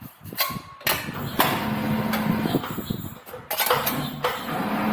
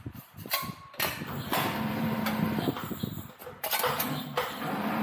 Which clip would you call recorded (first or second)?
first